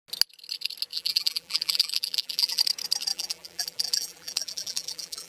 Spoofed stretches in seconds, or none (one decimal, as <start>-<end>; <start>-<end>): 0.9-2.6; 3.1-5.3